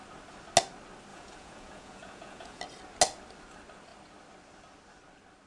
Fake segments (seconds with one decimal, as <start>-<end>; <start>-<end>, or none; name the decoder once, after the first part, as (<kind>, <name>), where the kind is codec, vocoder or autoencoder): 1.1-2.6 (vocoder, Vocos)